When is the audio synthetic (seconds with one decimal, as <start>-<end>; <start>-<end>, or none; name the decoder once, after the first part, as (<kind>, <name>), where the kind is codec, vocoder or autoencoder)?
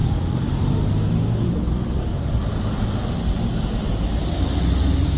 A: none